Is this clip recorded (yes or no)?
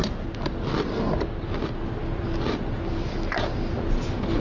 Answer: yes